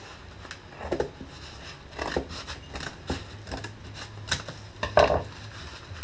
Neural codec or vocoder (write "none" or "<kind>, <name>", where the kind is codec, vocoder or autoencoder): none